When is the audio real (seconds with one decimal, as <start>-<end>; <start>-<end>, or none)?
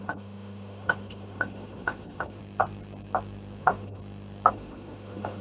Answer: 2.4-3.6; 4.0-4.5